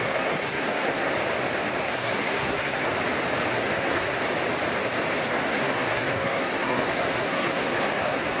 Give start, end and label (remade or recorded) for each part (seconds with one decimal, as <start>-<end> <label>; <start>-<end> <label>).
0.0-1.1 remade; 1.1-1.8 recorded; 1.8-2.9 remade; 2.9-3.5 recorded; 3.5-4.2 remade; 4.2-5.3 recorded; 5.3-8.4 remade